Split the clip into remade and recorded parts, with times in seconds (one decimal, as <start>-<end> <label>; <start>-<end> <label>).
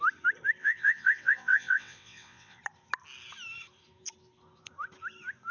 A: 0.0-0.6 recorded; 0.6-2.6 remade; 2.6-5.5 recorded